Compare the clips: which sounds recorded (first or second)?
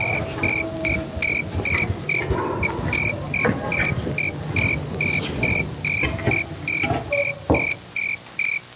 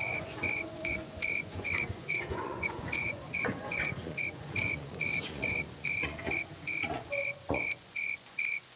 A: first